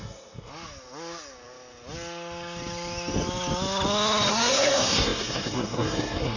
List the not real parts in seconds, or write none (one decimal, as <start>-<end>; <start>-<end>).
0.0-0.5; 4.3-6.4